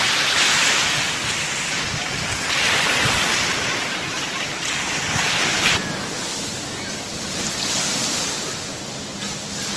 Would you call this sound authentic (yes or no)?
yes